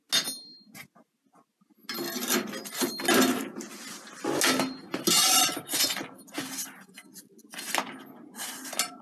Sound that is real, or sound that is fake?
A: real